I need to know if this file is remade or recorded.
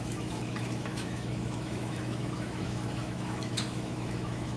remade